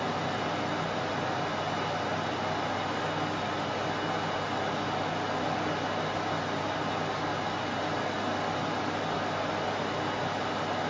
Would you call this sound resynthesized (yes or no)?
no